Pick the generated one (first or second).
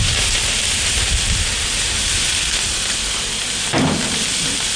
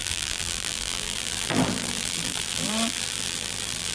second